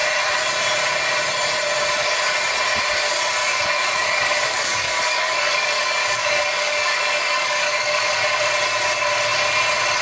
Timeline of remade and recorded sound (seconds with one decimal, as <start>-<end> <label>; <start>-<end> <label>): 0.0-3.4 recorded; 3.4-8.4 remade; 8.4-10.0 recorded